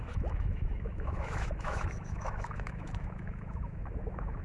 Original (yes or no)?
no